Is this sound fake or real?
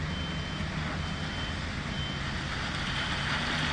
real